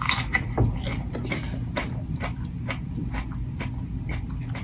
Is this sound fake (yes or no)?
no